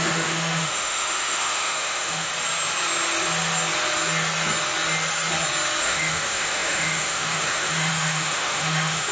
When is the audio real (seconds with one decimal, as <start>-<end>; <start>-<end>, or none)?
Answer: 2.3-5.8